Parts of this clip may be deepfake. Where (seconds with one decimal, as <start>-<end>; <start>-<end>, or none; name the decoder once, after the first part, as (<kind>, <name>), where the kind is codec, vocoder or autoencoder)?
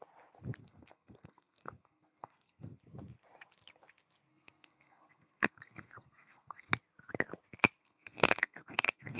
0.6-2.8 (codec, SNAC); 4.3-6.7; 7.8-9.2